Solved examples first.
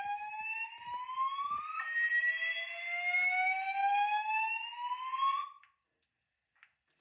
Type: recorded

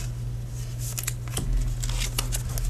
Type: recorded